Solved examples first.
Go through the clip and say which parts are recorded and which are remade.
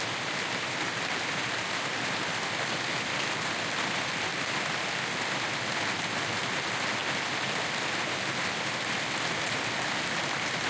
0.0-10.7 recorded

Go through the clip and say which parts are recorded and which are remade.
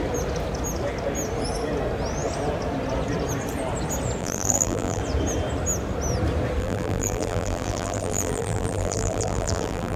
0.0-4.2 recorded; 4.2-5.0 remade; 5.0-6.6 recorded; 6.6-10.0 remade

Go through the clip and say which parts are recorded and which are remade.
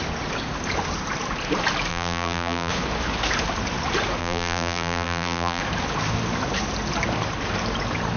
0.0-1.9 recorded; 1.9-2.7 remade; 2.7-4.2 recorded; 4.2-5.6 remade; 5.6-8.2 recorded